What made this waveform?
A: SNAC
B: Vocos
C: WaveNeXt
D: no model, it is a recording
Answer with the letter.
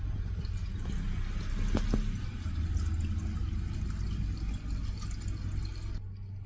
D